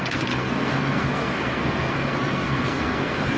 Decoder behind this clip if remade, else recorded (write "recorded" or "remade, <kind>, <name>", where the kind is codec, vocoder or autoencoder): remade, codec, SNAC